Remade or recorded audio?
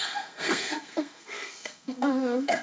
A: remade